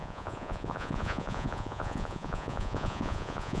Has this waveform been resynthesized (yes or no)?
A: yes